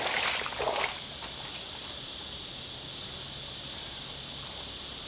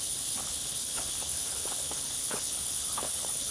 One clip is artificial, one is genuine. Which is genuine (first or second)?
first